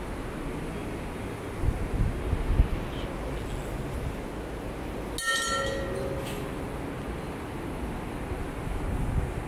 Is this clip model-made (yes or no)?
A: no